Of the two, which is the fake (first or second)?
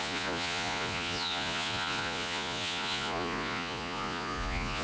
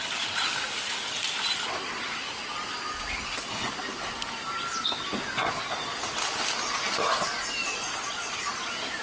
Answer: first